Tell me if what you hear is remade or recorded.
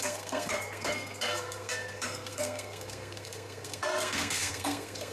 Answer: remade